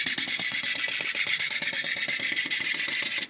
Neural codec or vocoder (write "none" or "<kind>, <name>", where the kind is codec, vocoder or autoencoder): none